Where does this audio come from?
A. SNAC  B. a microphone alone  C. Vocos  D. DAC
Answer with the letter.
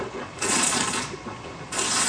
C